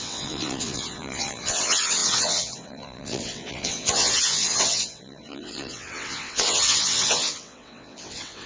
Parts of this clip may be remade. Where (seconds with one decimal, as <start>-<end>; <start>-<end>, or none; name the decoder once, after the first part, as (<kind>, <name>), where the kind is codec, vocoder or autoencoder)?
0.0-8.5 (vocoder, WaveNeXt)